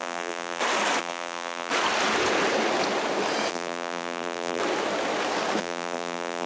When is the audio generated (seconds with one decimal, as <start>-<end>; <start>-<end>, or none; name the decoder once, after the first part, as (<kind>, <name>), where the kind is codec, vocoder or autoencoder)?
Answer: 0.0-0.6 (vocoder, BigVGAN v2); 1.0-1.7; 3.5-4.6; 5.6-6.5